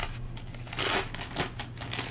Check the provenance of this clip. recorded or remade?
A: recorded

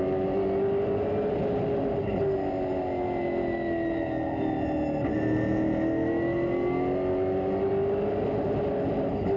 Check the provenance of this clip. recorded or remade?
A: recorded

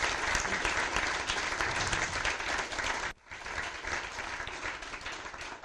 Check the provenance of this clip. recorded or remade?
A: recorded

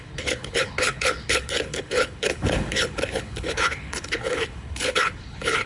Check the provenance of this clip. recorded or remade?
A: remade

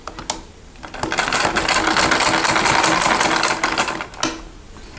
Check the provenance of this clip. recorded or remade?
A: recorded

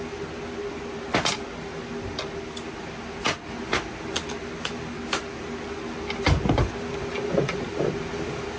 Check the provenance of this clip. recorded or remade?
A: recorded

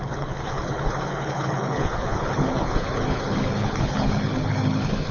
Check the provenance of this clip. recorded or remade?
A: remade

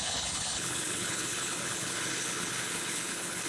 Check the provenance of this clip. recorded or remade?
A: remade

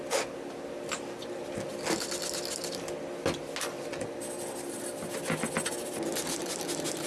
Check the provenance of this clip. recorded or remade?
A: recorded